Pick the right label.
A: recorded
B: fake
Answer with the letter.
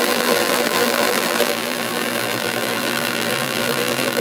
B